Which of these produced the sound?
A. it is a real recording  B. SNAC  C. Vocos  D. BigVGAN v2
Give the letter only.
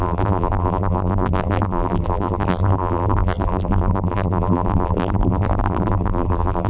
D